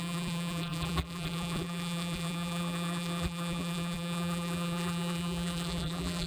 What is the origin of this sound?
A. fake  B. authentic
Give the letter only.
A